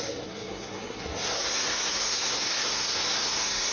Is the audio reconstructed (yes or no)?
yes